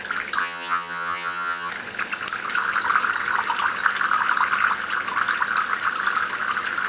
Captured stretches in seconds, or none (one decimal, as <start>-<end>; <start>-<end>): 0.0-0.4; 1.7-6.9